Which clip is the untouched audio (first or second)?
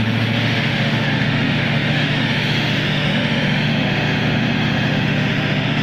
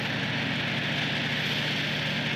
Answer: second